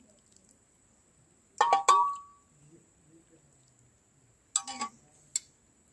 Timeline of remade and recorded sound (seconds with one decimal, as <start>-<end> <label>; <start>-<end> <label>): 0.0-5.9 recorded